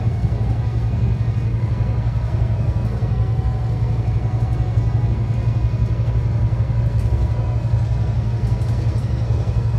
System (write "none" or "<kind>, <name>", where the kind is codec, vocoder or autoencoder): codec, SNAC